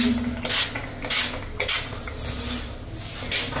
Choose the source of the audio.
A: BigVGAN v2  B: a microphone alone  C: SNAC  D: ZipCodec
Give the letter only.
B